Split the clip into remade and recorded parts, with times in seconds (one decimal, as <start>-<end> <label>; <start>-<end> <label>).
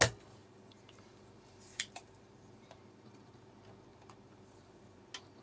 0.0-0.4 recorded; 0.4-3.5 remade; 3.5-3.9 recorded; 3.9-5.0 remade; 5.0-5.4 recorded